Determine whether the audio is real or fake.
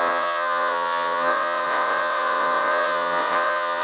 fake